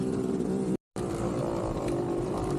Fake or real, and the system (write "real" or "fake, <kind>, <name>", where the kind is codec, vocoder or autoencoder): fake, vocoder, BigVGAN v2